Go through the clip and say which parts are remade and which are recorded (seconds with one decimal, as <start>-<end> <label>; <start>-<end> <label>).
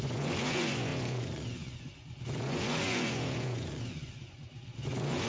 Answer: 0.0-5.3 remade